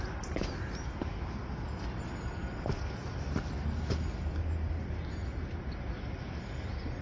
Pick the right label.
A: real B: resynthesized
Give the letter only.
A